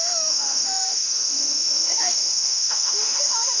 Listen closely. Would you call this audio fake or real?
fake